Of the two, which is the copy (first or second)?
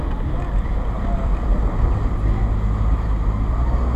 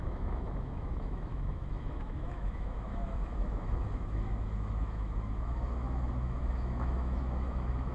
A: second